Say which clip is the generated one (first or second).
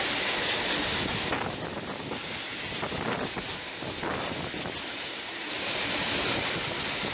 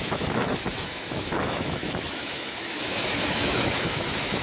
second